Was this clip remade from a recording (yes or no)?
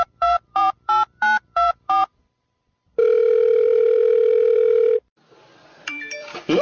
yes